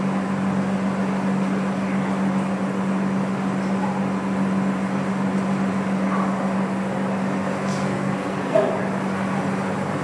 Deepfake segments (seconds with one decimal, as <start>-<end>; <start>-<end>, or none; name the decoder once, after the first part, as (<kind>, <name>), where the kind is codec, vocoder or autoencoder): 7.7-8.8 (codec, SNAC)